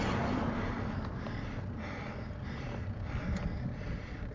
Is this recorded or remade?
recorded